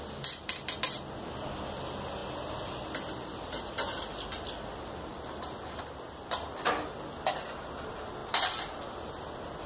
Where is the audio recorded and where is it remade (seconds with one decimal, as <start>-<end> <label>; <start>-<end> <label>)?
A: 0.0-9.7 recorded